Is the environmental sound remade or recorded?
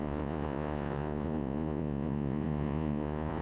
remade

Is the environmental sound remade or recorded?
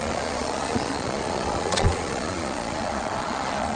remade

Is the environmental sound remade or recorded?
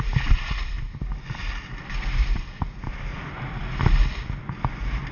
recorded